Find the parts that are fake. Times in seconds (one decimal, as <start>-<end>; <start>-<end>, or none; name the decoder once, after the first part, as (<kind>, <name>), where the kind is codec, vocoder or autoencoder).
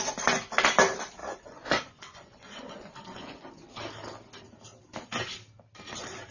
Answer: 1.2-3.5 (vocoder, Vocos)